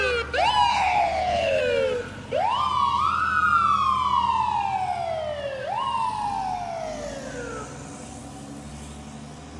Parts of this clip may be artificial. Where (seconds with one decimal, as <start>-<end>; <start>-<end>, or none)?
0.7-1.6

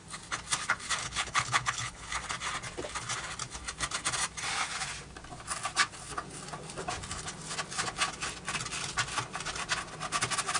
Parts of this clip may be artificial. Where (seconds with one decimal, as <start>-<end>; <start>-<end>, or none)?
1.0-2.1

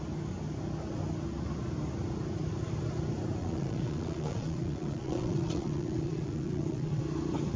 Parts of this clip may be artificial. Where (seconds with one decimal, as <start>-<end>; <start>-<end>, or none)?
3.4-7.0

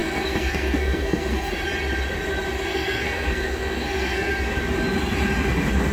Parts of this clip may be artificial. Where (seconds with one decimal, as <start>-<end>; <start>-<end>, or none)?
0.0-1.5; 2.7-4.3

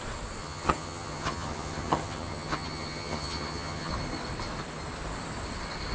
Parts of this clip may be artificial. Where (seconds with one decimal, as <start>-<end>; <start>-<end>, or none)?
0.4-3.9